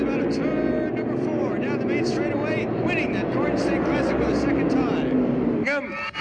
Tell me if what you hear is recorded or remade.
recorded